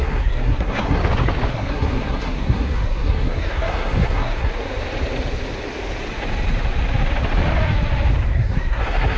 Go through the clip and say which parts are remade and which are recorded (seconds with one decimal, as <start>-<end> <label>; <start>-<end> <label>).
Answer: 0.0-1.0 remade; 1.0-1.5 recorded; 1.5-4.5 remade; 4.5-8.3 recorded; 8.3-9.2 remade